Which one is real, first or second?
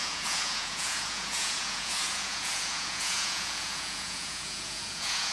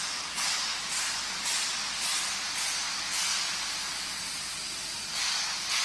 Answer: second